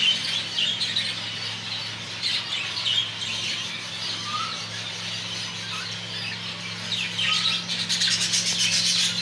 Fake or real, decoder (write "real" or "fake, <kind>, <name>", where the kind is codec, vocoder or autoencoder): real